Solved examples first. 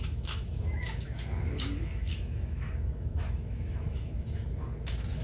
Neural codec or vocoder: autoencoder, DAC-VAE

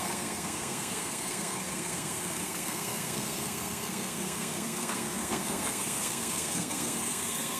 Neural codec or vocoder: codec, SNAC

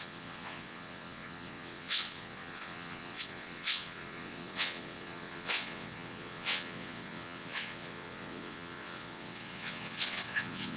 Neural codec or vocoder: vocoder, WaveNeXt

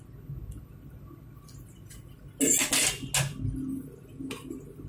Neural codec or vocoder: none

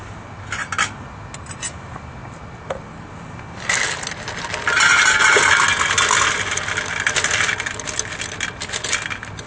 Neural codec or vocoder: none